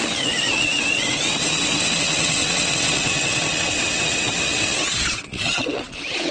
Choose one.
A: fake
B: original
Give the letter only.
A